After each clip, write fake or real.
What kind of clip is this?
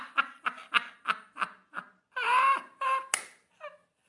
real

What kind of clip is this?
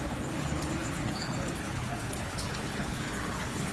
fake